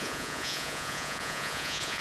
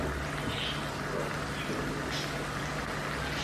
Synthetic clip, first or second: first